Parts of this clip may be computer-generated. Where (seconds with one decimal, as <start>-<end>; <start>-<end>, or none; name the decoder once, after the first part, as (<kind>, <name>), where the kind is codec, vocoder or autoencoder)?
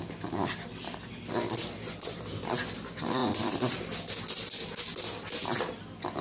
0.0-2.6 (vocoder, BigVGAN v2); 3.2-4.1